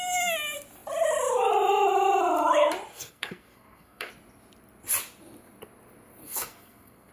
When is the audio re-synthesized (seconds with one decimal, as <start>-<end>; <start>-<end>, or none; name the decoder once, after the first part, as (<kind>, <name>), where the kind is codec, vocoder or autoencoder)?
2.9-4.1 (codec, SNAC); 6.2-7.1